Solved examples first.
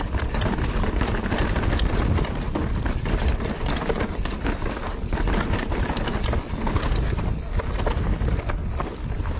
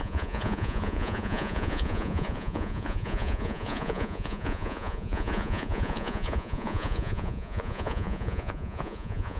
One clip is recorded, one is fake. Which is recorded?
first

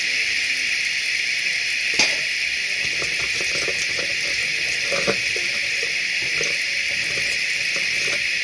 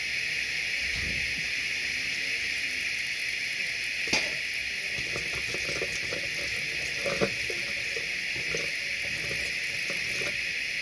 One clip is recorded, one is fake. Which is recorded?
second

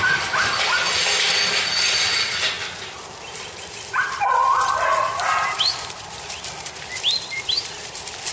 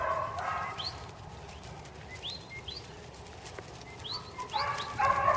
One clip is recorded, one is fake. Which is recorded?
second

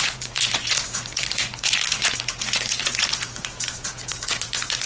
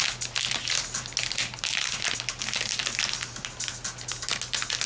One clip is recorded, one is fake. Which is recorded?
second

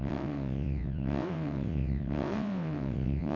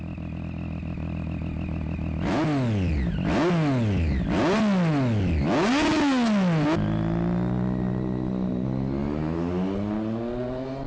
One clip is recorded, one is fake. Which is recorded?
second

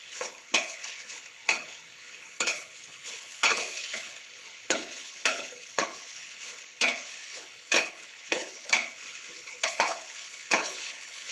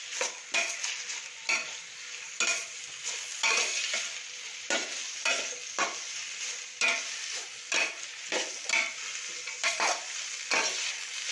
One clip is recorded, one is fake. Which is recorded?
second